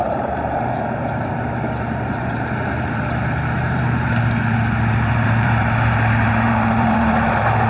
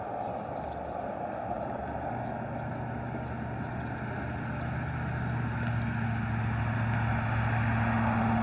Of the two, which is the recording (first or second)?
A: second